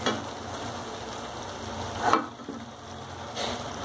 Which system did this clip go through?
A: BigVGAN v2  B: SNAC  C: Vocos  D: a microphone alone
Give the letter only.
D